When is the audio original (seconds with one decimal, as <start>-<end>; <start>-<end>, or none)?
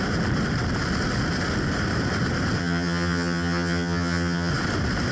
0.0-2.6; 4.5-5.1